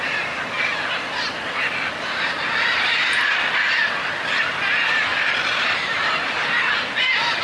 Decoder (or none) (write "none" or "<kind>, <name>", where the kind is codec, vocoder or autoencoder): none